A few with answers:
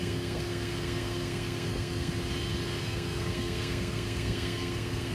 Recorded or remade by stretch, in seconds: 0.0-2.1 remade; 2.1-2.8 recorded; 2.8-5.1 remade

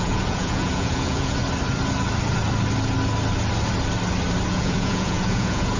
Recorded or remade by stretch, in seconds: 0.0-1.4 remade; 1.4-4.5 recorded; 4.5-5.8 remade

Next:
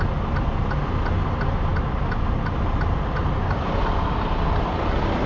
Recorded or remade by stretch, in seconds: 0.0-5.3 recorded

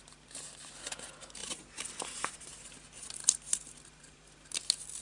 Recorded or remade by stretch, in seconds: 0.0-1.4 recorded; 1.4-2.7 remade; 2.7-3.2 recorded; 3.2-4.5 remade; 4.5-5.0 recorded